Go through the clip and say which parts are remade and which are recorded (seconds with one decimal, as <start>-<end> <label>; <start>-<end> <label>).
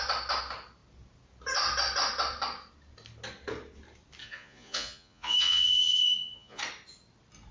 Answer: 0.0-4.2 recorded; 4.2-6.6 remade; 6.6-7.5 recorded